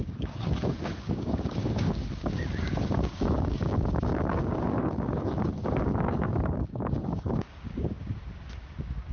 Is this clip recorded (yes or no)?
no